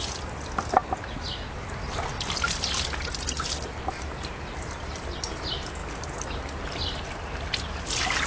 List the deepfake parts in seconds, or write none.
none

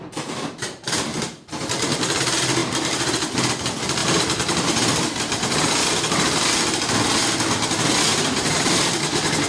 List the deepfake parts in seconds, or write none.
1.1-1.9; 2.6-3.3; 4.0-5.7; 8.1-8.7

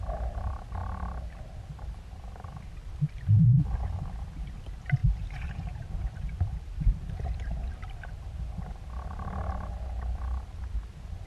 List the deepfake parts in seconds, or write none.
5.0-8.9

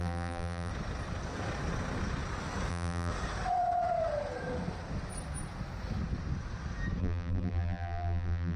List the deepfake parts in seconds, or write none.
0.0-0.7; 2.7-3.1; 7.0-8.6

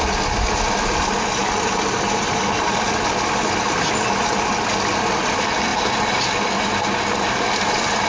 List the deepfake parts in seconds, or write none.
none